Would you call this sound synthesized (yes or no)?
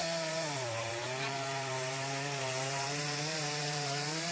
yes